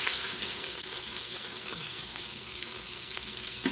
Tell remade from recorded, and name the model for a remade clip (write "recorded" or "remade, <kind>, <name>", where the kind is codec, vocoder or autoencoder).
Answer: remade, codec, SNAC